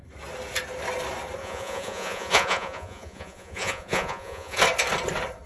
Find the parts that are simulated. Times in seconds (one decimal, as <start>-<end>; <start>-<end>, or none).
1.4-4.6